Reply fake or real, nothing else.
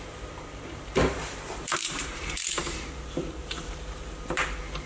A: fake